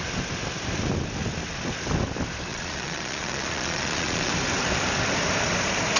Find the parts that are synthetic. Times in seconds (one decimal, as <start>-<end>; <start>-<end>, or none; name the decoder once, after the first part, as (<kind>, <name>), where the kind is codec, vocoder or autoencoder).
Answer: 2.5-4.3 (vocoder, Vocos)